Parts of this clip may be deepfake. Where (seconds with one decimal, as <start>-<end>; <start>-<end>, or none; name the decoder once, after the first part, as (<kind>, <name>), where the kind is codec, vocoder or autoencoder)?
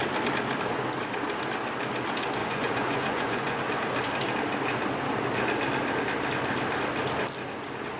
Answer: 2.4-3.6 (vocoder, Vocos)